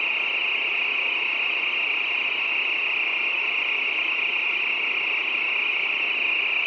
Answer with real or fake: real